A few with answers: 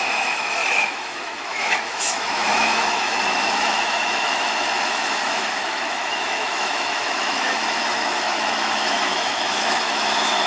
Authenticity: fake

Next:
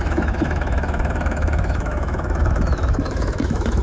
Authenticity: fake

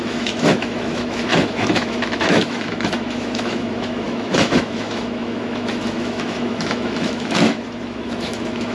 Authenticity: fake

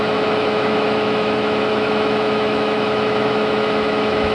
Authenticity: fake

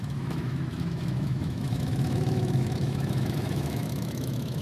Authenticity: fake